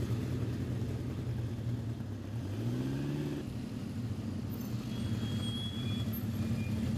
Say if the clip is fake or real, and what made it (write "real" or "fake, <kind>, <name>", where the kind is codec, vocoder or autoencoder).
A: real